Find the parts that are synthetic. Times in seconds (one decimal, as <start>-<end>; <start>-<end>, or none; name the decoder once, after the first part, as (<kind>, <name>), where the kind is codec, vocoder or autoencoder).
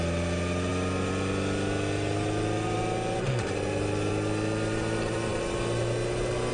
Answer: none